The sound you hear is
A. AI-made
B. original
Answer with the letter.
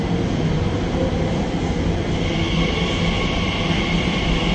A